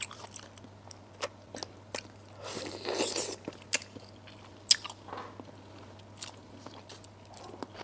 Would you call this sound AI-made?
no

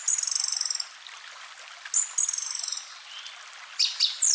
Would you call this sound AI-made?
no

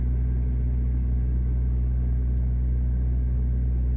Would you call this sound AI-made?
no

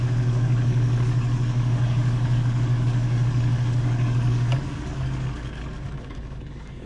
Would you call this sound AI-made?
yes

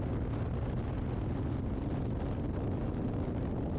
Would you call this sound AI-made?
no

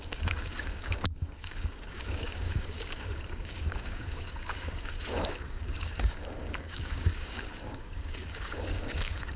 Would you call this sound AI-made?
yes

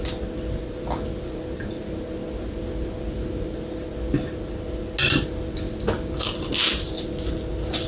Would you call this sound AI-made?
no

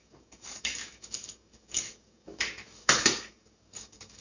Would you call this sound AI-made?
yes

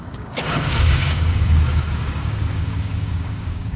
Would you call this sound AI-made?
yes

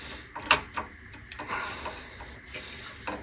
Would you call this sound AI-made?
no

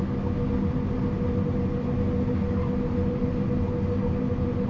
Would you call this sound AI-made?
no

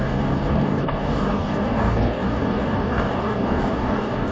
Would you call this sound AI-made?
yes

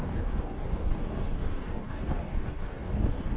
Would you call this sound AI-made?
yes